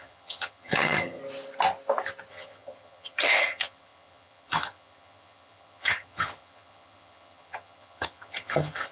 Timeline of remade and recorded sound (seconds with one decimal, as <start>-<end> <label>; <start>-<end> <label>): 0.0-1.2 remade; 1.2-2.3 recorded; 2.3-8.9 remade